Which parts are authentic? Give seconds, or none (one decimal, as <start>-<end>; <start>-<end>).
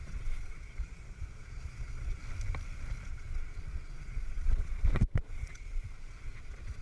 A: 2.2-3.1